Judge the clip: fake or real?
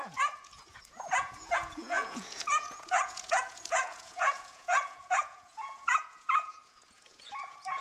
fake